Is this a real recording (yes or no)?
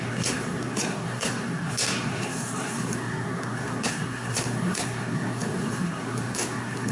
no